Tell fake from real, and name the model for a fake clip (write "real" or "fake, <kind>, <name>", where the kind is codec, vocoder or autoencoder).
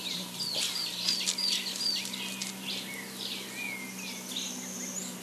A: real